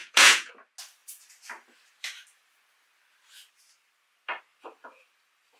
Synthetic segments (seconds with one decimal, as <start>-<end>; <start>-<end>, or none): 0.0-0.5